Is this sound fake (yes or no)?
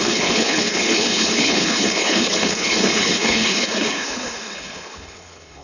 yes